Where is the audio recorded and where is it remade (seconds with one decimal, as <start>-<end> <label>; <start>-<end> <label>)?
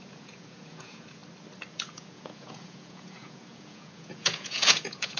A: 0.0-1.2 remade; 1.2-1.7 recorded; 1.7-5.2 remade